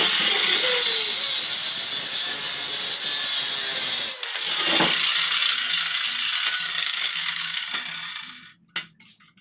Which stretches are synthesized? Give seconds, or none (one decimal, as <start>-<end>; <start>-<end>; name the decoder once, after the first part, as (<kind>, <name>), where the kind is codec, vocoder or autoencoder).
6.8-7.6 (codec, DAC)